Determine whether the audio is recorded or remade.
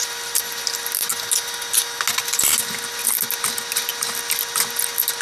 recorded